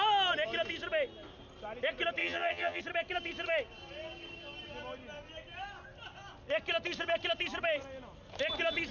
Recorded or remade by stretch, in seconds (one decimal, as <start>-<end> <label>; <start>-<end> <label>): 0.0-2.2 recorded; 2.2-2.8 remade; 2.8-8.9 recorded